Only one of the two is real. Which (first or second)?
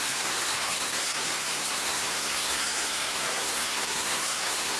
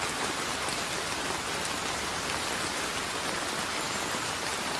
second